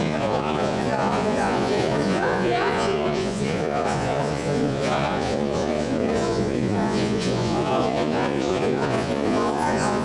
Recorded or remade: remade